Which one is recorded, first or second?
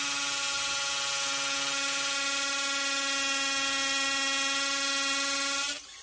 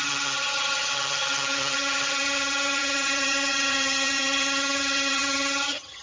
first